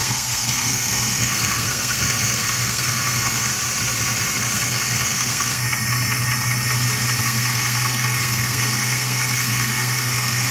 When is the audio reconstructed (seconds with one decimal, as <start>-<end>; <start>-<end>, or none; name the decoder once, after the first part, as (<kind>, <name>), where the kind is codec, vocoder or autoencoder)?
0.0-3.5 (codec, SNAC); 4.4-5.6; 7.2-10.5